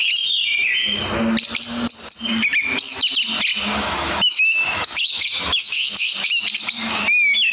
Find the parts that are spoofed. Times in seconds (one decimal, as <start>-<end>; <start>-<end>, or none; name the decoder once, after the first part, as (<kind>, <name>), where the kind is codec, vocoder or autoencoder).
3.5-6.4 (autoencoder, DAC-VAE)